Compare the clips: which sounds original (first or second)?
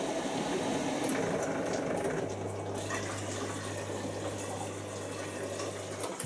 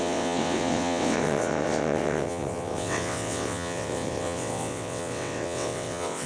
first